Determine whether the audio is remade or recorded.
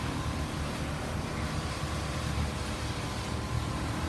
remade